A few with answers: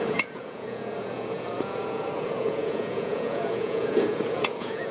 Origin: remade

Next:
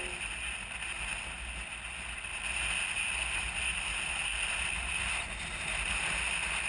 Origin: recorded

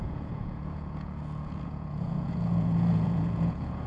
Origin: remade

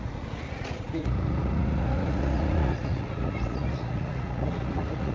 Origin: remade